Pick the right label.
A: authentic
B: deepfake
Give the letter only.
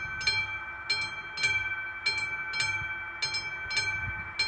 A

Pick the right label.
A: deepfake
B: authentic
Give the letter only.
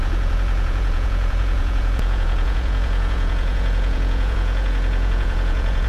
A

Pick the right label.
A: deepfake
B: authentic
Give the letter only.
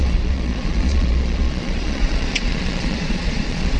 A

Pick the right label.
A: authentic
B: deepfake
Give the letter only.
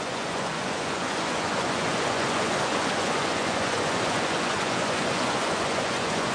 B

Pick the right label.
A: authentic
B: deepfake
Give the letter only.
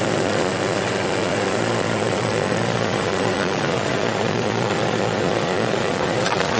B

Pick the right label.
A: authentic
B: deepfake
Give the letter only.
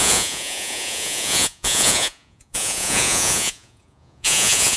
B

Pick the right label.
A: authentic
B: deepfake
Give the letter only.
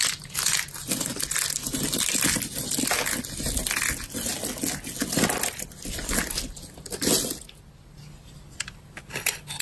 A